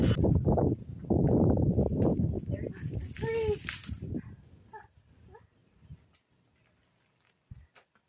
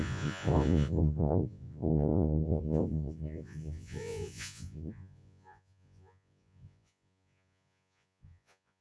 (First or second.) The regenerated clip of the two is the second